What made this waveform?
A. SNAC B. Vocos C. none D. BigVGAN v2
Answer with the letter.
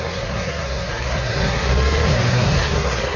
A